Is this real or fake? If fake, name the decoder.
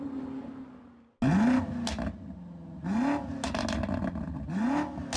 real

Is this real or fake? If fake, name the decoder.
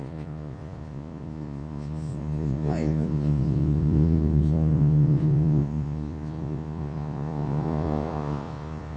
fake, vocoder, Vocos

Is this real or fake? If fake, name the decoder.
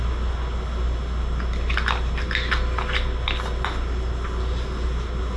real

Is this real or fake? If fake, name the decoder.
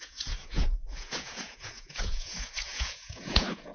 fake, vocoder, Vocos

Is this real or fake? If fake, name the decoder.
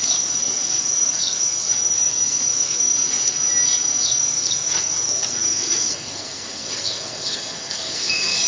fake, codec, SNAC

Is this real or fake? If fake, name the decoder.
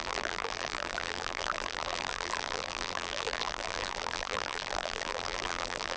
fake, vocoder, BigVGAN v2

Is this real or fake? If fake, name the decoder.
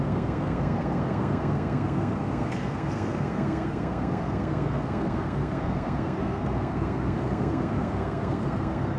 fake, codec, SNAC